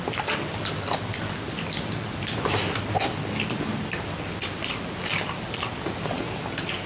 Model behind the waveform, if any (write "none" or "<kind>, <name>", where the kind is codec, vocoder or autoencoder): none